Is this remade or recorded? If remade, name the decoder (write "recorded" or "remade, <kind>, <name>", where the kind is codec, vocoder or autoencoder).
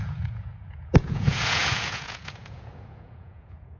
remade, vocoder, Vocos